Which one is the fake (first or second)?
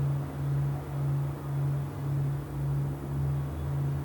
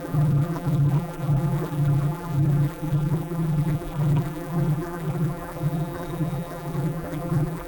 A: second